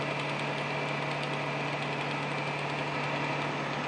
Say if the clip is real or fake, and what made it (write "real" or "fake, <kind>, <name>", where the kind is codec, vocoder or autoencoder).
real